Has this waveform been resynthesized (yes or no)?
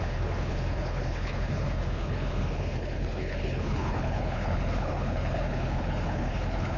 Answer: yes